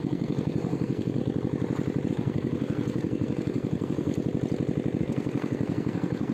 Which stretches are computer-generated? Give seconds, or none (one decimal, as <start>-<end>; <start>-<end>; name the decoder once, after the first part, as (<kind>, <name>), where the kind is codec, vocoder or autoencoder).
0.0-1.2 (codec, SNAC); 2.1-4.1; 5.0-6.3